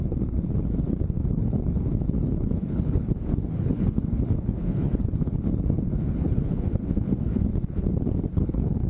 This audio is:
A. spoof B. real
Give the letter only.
A